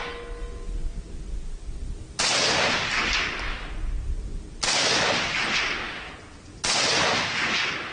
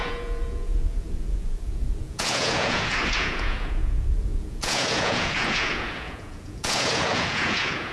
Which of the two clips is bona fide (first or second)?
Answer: first